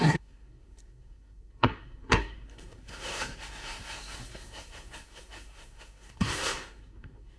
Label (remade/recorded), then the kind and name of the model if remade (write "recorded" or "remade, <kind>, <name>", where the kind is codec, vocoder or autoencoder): remade, codec, SNAC